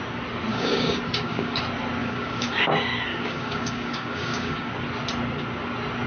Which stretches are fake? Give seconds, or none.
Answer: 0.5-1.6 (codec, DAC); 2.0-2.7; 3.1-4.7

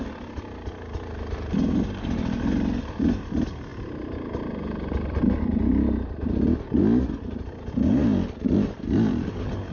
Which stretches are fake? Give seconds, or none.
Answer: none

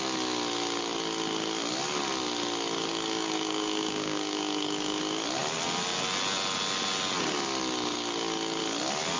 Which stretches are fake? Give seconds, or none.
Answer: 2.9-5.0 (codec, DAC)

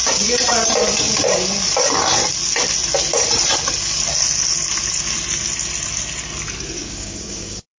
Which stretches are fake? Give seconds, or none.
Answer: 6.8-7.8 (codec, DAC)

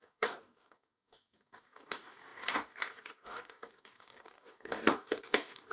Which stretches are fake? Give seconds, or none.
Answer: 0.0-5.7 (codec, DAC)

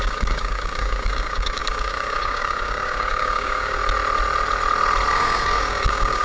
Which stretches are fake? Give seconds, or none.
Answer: 0.0-3.8 (codec, DAC); 5.1-6.2